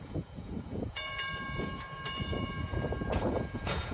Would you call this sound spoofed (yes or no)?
yes